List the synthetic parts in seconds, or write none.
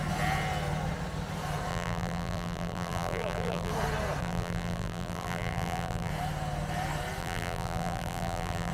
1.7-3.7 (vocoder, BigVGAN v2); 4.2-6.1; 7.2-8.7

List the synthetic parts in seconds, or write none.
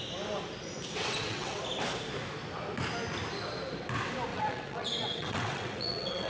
1.0-1.6 (vocoder, WaveNeXt); 4.3-6.3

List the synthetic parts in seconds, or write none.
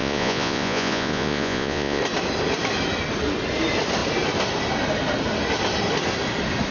0.0-2.0 (vocoder, Vocos)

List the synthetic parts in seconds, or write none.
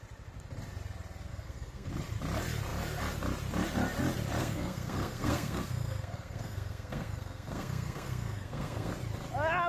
1.3-1.9 (codec, SNAC); 4.4-8.9